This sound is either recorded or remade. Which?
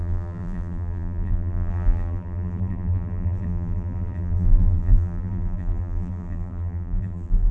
remade